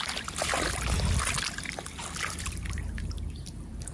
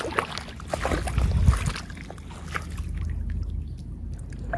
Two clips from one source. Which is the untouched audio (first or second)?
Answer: second